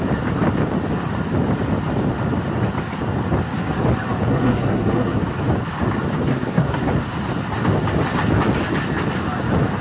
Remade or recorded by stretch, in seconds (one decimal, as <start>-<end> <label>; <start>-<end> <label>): 0.0-4.3 recorded; 4.3-5.2 remade; 5.2-6.3 recorded; 6.3-6.9 remade; 6.9-9.8 recorded